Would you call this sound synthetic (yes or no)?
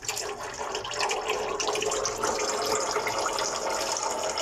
no